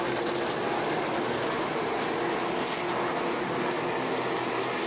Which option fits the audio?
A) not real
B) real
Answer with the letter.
B